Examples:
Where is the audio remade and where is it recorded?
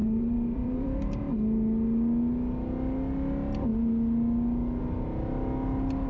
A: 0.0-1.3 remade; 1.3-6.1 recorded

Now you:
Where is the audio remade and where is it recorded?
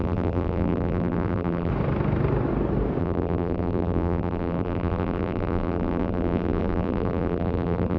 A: 0.0-1.7 remade; 1.7-3.0 recorded; 3.0-8.0 remade